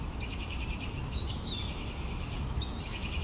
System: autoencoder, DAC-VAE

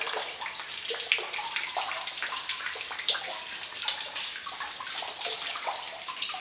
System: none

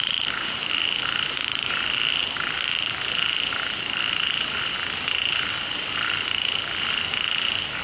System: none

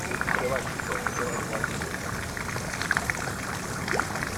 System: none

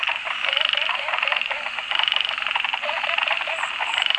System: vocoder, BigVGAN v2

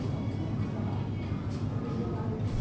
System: none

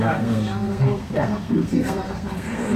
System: codec, SNAC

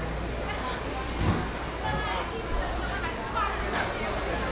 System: none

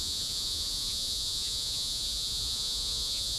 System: vocoder, Vocos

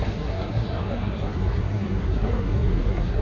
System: codec, SNAC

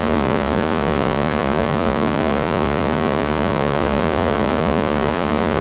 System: vocoder, Vocos